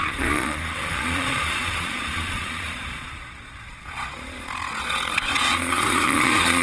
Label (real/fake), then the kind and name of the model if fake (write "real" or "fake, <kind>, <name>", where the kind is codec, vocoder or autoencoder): fake, vocoder, Vocos